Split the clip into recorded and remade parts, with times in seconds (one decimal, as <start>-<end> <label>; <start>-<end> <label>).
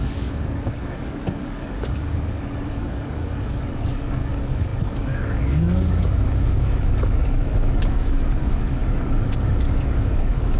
0.0-10.6 remade